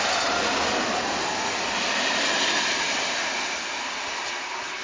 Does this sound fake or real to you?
real